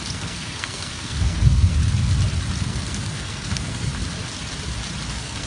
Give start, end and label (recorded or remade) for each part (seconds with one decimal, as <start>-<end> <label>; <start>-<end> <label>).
0.0-1.8 remade; 1.8-2.6 recorded; 2.6-3.9 remade; 3.9-5.1 recorded; 5.1-5.5 remade